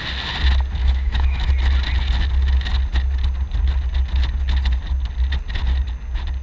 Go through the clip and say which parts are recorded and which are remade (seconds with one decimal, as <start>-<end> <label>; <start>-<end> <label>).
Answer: 0.0-0.8 recorded; 0.8-1.5 remade; 1.5-6.4 recorded